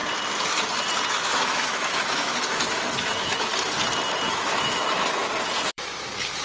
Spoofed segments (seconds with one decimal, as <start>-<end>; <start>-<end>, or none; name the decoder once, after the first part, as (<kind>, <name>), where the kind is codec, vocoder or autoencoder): 1.1-3.5 (autoencoder, DAC-VAE); 4.3-5.2; 5.7-6.4

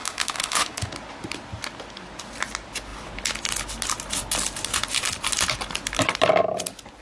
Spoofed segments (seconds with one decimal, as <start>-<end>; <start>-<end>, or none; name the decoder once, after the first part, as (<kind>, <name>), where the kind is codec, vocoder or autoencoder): 0.0-0.9 (autoencoder, DAC-VAE)

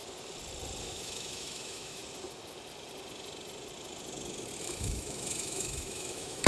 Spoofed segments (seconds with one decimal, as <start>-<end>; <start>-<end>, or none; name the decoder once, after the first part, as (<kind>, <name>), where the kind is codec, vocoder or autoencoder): 0.8-2.0 (autoencoder, DAC-VAE); 4.6-6.5